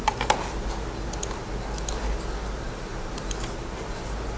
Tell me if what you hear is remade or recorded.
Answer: recorded